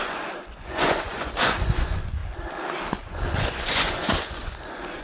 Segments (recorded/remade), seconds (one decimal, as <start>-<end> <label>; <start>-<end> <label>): 0.0-2.2 remade; 2.2-2.9 recorded; 2.9-5.0 remade